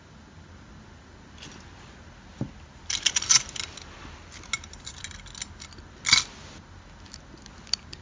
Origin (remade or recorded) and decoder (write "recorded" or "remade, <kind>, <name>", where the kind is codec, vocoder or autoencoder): recorded